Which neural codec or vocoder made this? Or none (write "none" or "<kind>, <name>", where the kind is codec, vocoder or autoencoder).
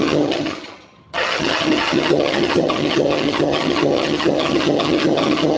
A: vocoder, HiFi-GAN